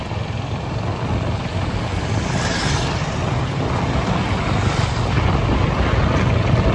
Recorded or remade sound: recorded